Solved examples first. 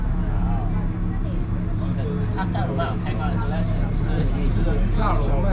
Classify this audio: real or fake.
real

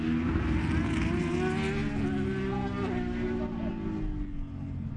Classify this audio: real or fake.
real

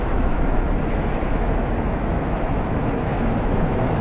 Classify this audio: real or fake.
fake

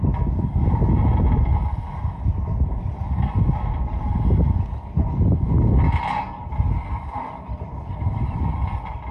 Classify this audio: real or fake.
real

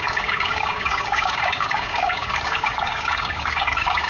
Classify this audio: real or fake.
fake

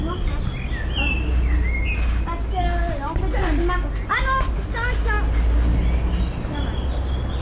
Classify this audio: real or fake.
real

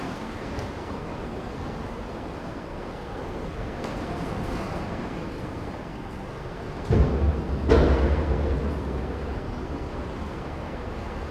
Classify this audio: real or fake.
fake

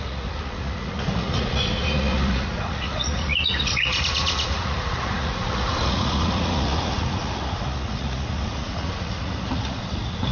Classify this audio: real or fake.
fake